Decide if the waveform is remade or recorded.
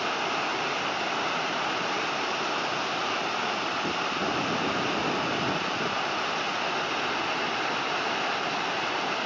recorded